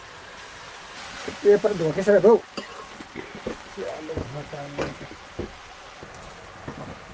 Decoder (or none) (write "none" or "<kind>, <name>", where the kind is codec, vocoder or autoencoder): none